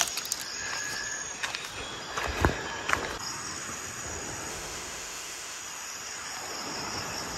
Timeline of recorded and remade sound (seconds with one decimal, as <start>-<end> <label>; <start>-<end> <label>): 0.0-4.5 recorded; 4.5-5.6 remade; 5.6-7.4 recorded